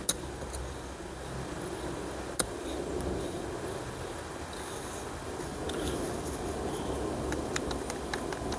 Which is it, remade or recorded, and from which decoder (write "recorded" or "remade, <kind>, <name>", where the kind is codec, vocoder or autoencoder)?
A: recorded